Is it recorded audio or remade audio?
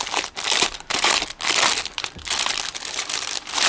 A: recorded